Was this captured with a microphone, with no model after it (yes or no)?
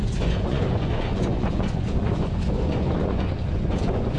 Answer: no